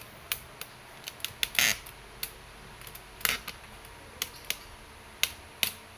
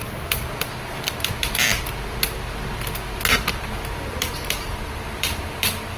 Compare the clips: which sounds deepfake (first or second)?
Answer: second